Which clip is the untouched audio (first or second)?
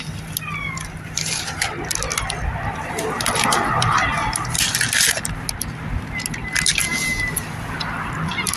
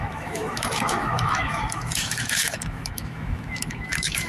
first